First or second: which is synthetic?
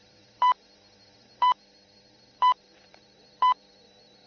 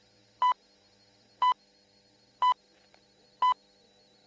first